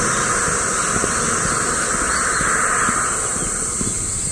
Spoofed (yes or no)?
no